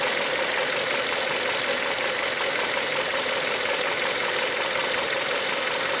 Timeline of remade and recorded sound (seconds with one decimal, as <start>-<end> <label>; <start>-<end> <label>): 0.0-6.0 recorded